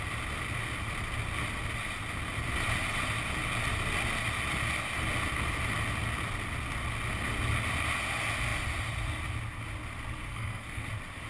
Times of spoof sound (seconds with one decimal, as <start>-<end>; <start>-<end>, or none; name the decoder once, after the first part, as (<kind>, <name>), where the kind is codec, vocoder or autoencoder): 10.3-10.9 (codec, SNAC)